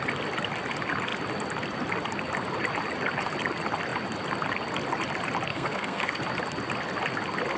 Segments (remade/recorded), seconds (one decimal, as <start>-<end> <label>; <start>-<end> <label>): 0.0-5.5 recorded; 5.5-6.2 remade; 6.2-7.6 recorded